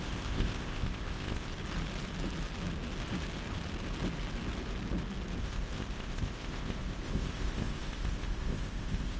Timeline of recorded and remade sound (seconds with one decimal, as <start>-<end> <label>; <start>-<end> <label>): 0.0-1.5 remade; 1.5-5.4 recorded; 5.4-9.2 remade